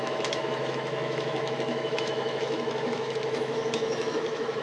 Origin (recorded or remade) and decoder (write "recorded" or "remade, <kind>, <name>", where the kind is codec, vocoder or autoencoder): remade, autoencoder, DAC-VAE